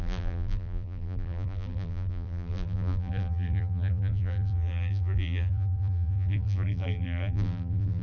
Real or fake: fake